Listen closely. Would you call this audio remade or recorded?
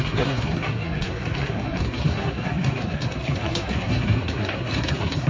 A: remade